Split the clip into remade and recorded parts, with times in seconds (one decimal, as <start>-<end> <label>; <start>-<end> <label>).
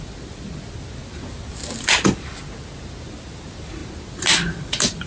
0.0-5.1 recorded